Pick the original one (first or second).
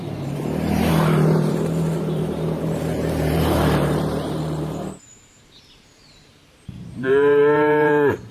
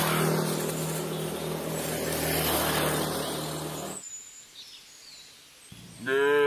second